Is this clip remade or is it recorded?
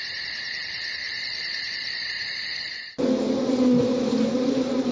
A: recorded